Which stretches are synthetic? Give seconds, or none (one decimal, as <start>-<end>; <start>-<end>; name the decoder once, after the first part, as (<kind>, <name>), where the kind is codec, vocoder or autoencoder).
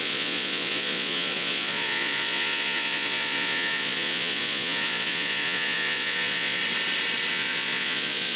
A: 0.0-6.6 (vocoder, Vocos); 7.3-8.4